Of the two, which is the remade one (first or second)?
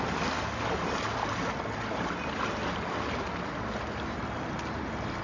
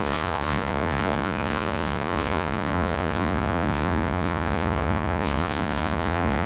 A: second